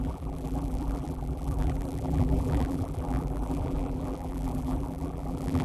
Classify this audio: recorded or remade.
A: remade